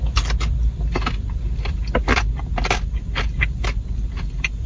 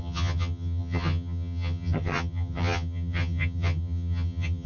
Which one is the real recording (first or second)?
first